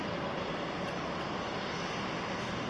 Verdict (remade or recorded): recorded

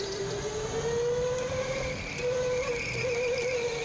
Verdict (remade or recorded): recorded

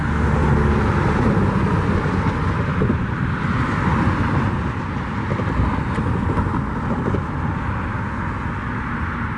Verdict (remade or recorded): recorded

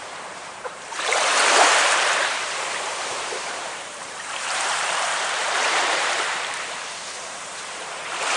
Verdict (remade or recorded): remade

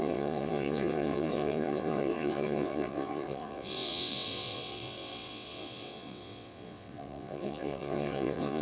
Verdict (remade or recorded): remade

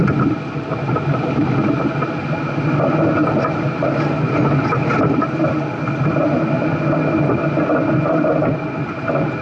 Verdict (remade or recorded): recorded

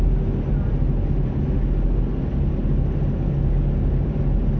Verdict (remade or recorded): recorded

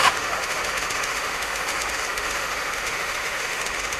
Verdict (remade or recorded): remade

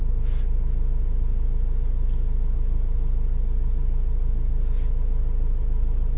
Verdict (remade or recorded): recorded